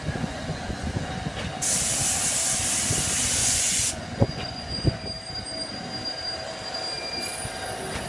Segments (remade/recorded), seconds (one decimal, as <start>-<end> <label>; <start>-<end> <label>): 0.0-1.1 remade; 1.1-3.4 recorded; 3.4-5.0 remade; 5.0-8.1 recorded